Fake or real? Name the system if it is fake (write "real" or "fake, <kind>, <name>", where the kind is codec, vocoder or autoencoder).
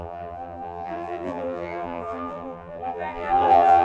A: fake, vocoder, BigVGAN v2